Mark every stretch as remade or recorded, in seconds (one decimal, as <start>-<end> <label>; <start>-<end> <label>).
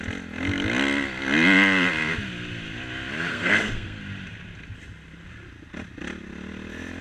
0.0-3.3 recorded; 3.3-4.0 remade; 4.0-7.0 recorded